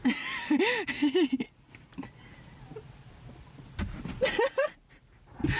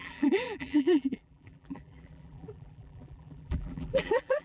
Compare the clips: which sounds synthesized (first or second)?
second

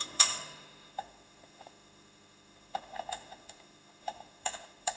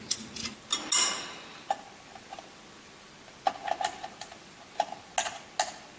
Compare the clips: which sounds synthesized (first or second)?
first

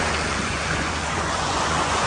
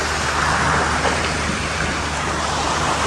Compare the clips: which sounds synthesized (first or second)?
first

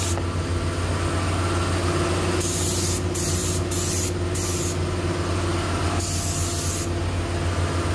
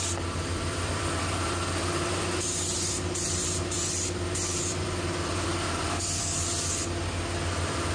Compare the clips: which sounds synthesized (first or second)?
second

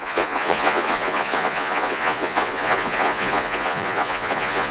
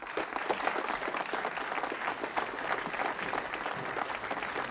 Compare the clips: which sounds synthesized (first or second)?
first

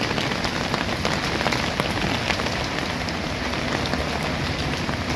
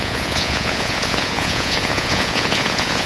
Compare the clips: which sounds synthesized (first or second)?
second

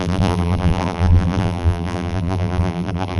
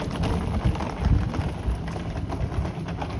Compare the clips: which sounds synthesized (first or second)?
first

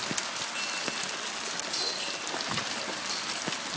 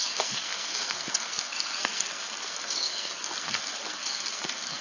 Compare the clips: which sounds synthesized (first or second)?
second